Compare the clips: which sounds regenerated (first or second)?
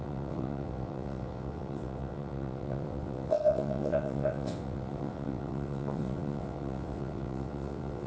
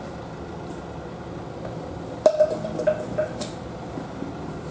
first